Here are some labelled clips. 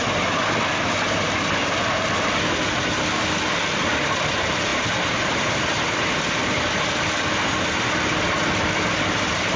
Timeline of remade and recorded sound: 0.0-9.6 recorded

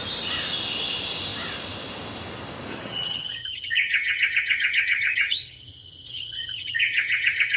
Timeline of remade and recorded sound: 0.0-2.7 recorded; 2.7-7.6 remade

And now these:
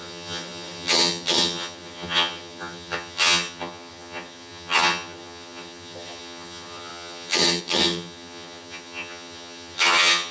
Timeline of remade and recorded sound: 0.0-10.3 remade

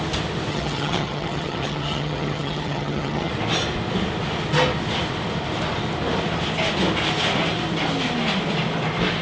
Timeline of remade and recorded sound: 0.0-0.5 recorded; 0.5-3.3 remade; 3.3-9.2 recorded